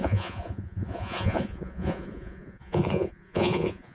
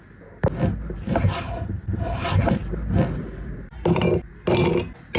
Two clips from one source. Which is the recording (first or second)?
second